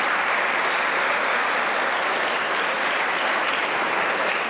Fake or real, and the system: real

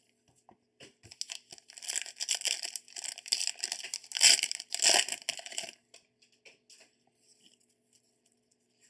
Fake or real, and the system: real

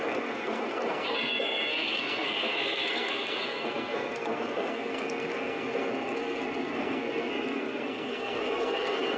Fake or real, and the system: fake, codec, SNAC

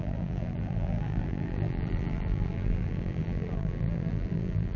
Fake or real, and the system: fake, vocoder, BigVGAN v2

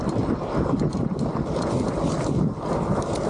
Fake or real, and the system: real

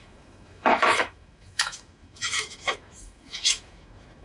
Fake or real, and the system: fake, autoencoder, DAC-VAE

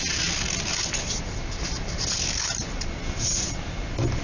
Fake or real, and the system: real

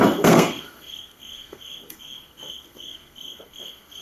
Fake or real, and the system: fake, codec, SNAC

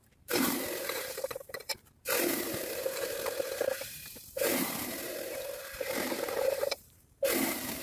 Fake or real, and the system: fake, vocoder, BigVGAN v2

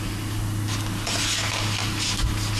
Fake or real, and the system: real